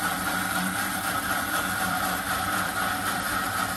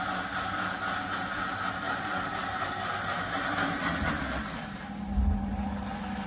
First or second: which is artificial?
first